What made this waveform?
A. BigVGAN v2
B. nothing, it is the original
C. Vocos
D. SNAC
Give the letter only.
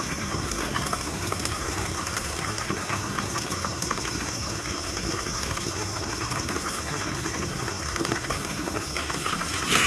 D